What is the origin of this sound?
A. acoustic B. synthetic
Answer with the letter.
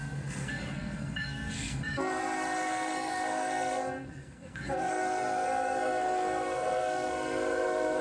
B